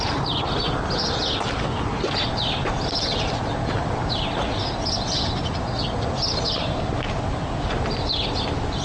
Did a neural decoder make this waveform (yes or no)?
no